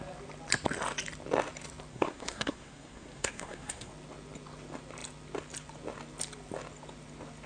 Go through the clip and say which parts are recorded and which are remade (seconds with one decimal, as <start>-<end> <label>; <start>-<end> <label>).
0.0-1.9 recorded; 1.9-3.9 remade; 3.9-7.5 recorded